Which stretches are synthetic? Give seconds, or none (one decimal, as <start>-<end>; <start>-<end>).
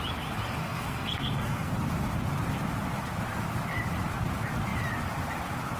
0.6-1.7